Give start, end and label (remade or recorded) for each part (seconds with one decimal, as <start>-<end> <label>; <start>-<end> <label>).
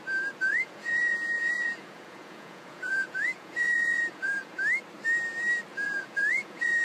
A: 0.0-0.5 recorded; 0.5-4.6 remade; 4.6-5.7 recorded; 5.7-6.8 remade